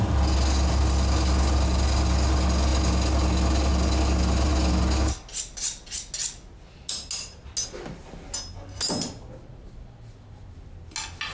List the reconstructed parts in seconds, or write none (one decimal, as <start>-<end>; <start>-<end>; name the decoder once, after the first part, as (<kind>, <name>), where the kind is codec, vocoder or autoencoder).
none